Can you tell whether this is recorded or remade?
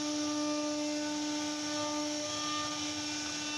recorded